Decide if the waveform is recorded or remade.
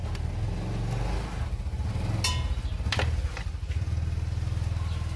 recorded